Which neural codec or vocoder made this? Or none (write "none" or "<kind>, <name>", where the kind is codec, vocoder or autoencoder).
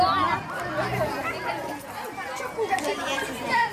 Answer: none